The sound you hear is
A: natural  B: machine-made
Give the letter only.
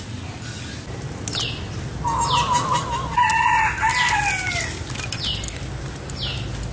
A